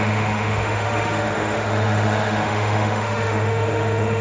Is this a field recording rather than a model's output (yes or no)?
no